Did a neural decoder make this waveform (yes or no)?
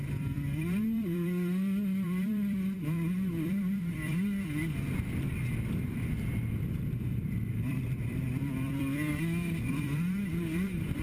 yes